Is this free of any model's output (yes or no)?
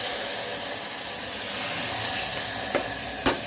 yes